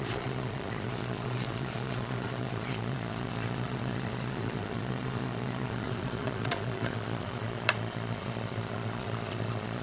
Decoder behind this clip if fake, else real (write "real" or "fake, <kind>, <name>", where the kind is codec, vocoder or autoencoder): fake, vocoder, Vocos